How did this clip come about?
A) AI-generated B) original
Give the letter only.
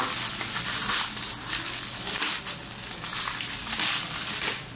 B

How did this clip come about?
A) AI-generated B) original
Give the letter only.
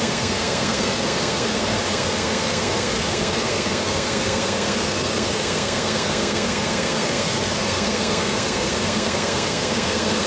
A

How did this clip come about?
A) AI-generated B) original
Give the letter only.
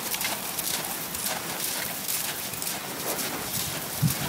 B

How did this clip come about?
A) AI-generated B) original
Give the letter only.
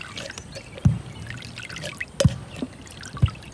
B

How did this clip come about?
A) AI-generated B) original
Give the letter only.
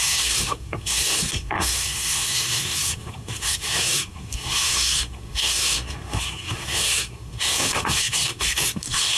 A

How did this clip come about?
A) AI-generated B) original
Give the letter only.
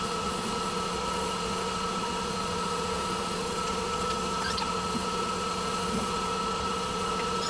A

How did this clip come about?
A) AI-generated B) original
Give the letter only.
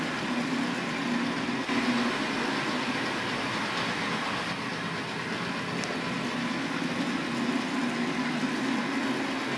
B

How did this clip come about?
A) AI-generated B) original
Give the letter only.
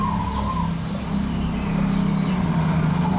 B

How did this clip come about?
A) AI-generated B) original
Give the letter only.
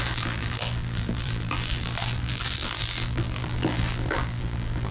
A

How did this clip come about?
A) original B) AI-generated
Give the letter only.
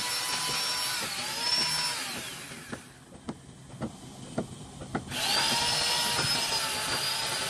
A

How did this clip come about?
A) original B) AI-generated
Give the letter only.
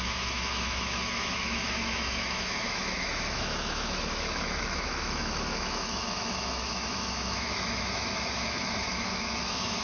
B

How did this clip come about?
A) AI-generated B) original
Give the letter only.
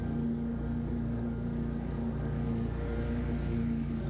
A